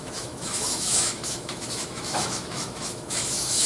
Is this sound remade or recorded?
remade